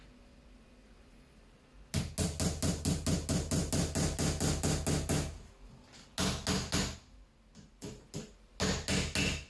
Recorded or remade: recorded